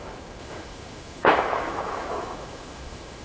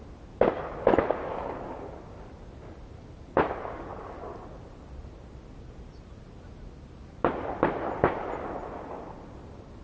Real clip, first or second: second